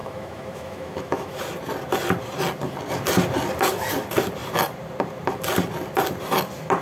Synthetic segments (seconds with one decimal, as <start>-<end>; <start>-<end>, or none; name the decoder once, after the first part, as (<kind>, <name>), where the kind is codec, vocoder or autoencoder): 0.0-1.4 (autoencoder, DAC-VAE)